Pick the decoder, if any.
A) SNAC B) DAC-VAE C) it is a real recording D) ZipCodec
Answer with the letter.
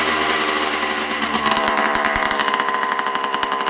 C